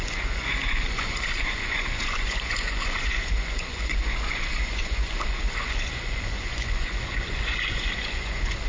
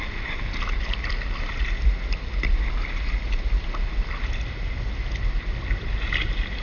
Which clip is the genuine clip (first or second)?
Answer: second